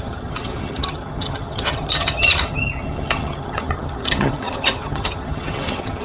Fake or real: fake